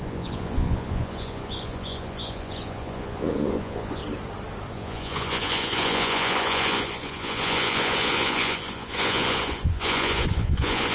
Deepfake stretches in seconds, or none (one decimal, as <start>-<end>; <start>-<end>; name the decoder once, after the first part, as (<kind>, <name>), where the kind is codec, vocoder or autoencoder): 0.0-4.0 (vocoder, Vocos); 4.7-10.9